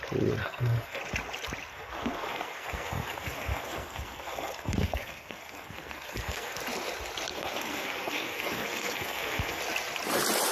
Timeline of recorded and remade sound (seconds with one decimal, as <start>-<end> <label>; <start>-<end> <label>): 0.0-0.4 recorded; 0.4-1.0 remade; 1.0-1.7 recorded; 1.7-6.6 remade; 6.6-7.3 recorded; 7.3-9.6 remade; 9.6-10.5 recorded